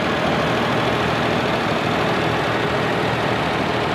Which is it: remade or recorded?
recorded